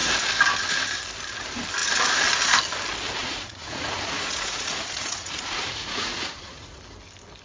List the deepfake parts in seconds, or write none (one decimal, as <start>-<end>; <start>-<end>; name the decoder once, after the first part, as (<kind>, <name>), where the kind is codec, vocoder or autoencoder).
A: 3.2-6.8 (vocoder, Vocos)